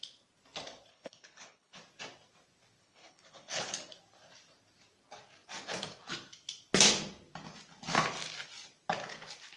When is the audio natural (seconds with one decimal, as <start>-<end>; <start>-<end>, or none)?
0.0-0.9; 1.8-2.8; 3.8-9.6